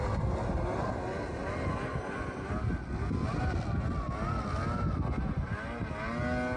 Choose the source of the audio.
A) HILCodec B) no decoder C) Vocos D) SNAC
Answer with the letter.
B